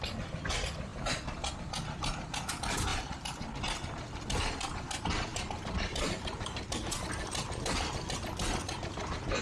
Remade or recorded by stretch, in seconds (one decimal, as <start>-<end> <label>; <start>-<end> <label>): 0.0-2.9 recorded; 2.9-3.6 remade; 3.6-5.3 recorded; 5.3-7.9 remade; 7.9-9.4 recorded